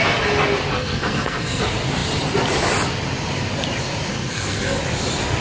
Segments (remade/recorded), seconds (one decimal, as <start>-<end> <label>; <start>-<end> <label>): 0.0-0.7 recorded; 0.7-1.6 remade; 1.6-4.1 recorded; 4.1-4.8 remade; 4.8-5.4 recorded